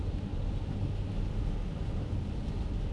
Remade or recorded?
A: recorded